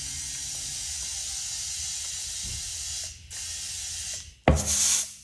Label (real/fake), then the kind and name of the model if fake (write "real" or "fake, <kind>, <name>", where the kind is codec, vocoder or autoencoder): real